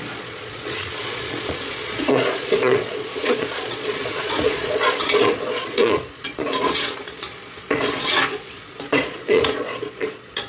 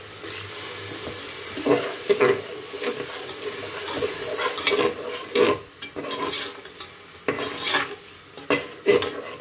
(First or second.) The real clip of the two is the second